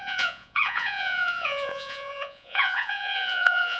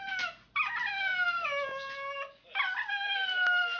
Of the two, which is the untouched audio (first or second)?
second